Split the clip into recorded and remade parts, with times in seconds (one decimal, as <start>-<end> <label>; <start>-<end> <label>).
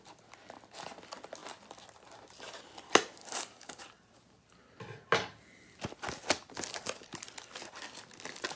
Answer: 0.0-3.2 recorded; 3.2-3.8 remade; 3.8-8.6 recorded